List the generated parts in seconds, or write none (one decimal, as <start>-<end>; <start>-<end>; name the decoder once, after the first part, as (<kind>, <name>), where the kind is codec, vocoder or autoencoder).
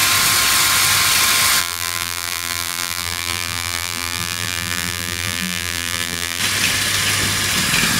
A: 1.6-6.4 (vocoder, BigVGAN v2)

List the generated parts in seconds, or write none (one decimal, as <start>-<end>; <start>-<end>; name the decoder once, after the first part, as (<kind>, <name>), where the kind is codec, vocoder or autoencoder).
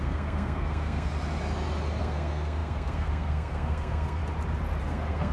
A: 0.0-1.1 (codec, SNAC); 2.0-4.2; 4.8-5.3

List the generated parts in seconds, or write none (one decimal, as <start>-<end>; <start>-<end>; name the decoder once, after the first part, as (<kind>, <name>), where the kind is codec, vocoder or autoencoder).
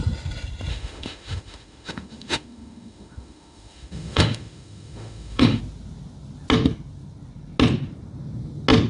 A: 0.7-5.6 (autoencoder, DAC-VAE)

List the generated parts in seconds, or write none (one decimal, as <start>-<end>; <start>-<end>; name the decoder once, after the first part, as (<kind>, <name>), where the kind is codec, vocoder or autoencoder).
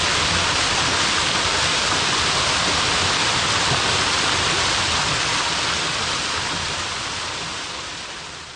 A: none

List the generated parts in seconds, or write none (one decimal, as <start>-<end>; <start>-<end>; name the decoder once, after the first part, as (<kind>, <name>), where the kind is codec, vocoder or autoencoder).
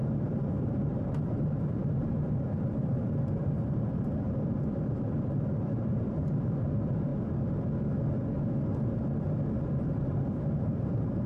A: 0.0-7.1 (vocoder, BigVGAN v2); 10.0-11.3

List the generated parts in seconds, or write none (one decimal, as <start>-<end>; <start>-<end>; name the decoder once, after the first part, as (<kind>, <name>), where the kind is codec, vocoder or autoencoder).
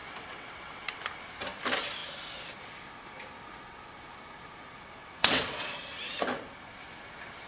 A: 0.0-1.0 (vocoder, WaveNeXt); 5.0-5.8